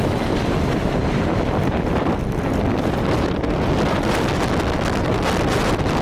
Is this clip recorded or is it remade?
recorded